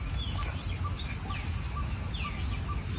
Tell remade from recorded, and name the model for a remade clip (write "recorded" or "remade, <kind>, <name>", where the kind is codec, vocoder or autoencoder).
recorded